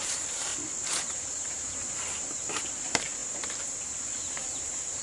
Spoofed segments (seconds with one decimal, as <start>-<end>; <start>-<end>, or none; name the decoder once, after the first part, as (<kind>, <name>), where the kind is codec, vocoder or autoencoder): 0.0-0.5 (vocoder, BigVGAN v2); 1.3-3.2; 4.2-5.0